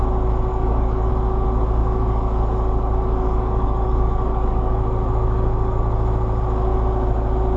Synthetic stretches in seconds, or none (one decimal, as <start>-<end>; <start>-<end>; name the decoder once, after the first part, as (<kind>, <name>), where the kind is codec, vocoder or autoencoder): 0.5-1.1 (codec, DAC); 1.8-5.8

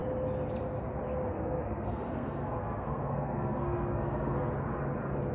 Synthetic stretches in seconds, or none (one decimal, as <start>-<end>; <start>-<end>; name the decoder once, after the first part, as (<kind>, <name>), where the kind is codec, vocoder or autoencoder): 1.3-4.5 (codec, SNAC)

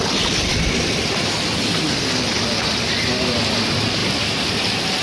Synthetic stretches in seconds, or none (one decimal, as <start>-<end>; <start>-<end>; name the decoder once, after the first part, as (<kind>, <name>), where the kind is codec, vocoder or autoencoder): none

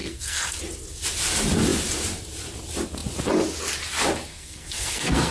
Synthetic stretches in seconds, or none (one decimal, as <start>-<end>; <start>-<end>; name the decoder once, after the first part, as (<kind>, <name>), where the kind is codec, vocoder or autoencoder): 0.0-0.6 (codec, SNAC); 4.3-5.3

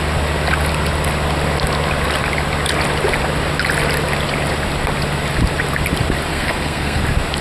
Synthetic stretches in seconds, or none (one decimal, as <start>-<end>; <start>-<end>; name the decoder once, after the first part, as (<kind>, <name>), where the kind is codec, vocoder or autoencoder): 6.3-7.0 (codec, SNAC)

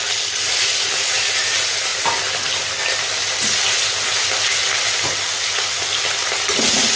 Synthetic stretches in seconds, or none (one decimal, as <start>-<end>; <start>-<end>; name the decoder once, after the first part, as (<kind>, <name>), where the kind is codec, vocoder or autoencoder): none